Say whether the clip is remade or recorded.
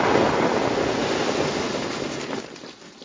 recorded